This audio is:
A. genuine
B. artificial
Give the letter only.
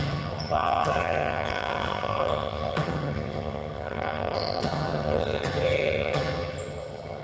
B